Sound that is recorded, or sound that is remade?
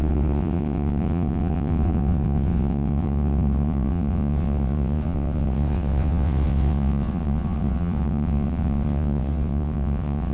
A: remade